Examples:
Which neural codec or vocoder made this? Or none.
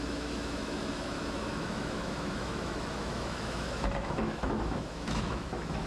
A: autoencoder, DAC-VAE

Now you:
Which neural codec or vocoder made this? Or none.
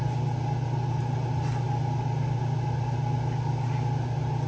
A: none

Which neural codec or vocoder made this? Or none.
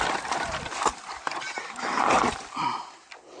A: none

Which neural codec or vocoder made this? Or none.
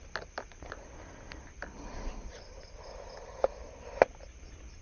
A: none